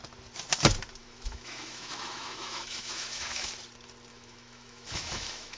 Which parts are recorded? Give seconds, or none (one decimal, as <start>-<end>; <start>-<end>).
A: 0.0-1.0; 3.5-4.1